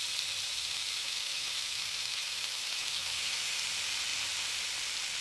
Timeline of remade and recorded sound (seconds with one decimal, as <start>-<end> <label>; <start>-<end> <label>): 0.0-0.5 recorded; 0.5-3.6 remade; 3.6-5.2 recorded